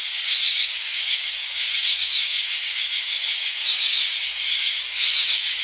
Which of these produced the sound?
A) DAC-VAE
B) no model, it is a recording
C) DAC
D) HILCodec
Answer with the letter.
C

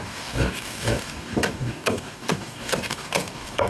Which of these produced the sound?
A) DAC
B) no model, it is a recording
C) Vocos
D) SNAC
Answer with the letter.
A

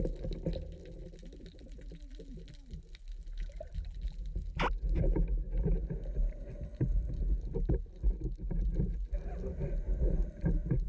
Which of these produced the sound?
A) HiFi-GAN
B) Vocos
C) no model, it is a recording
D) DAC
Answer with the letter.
C